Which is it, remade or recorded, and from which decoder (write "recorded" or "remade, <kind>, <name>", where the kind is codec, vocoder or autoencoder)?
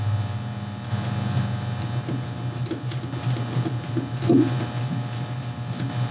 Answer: recorded